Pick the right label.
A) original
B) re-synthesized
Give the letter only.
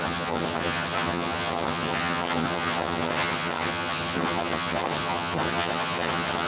B